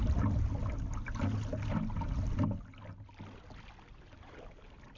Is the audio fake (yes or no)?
no